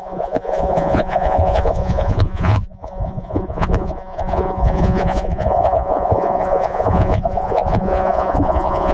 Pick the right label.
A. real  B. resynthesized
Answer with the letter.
B